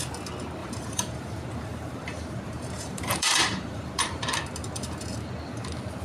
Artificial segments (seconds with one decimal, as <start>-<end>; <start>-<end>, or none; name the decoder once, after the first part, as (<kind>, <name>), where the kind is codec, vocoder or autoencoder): 0.6-4.2 (vocoder, BigVGAN v2)